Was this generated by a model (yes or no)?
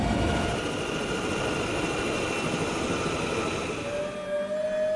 no